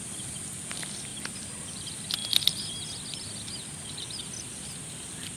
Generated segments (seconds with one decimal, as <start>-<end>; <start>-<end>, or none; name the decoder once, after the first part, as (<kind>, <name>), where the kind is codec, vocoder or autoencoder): 0.0-2.2 (vocoder, BigVGAN v2); 3.9-5.4